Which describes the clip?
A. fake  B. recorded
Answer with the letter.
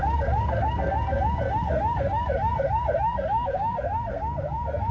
A